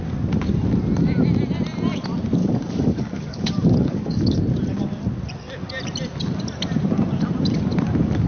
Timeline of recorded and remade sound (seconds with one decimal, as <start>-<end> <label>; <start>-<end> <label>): 0.0-2.4 recorded; 2.4-4.4 remade; 4.4-8.3 recorded